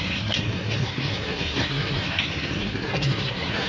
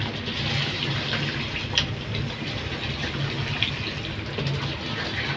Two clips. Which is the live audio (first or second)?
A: second